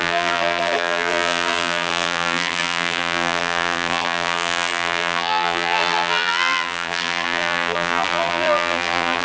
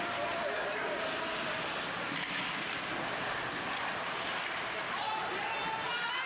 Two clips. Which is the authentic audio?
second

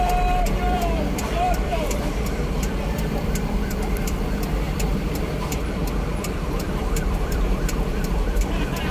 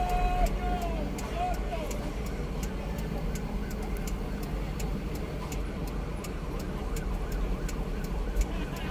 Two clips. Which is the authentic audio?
second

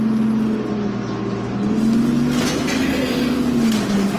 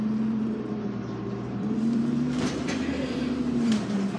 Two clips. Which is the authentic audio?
first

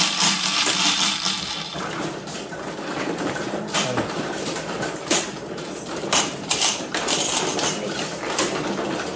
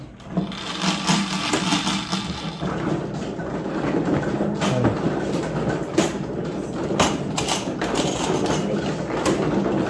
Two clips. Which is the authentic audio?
second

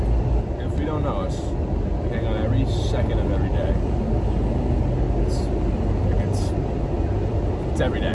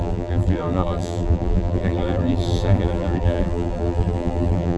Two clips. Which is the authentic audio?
first